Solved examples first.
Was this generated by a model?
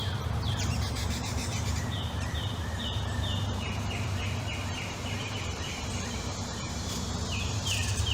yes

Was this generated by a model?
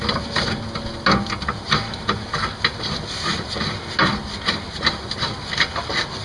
no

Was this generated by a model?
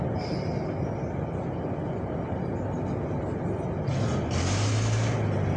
no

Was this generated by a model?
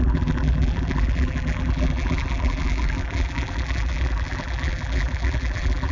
yes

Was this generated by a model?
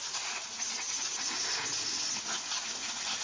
no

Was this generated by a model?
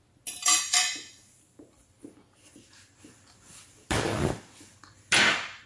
no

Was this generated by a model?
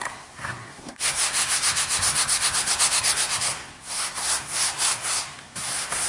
yes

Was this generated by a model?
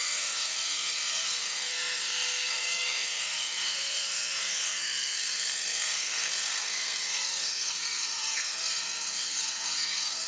yes